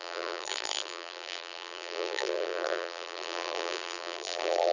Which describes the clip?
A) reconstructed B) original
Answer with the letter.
A